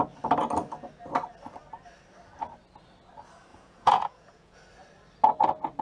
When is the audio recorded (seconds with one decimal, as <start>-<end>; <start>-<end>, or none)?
0.0-3.5; 4.6-5.8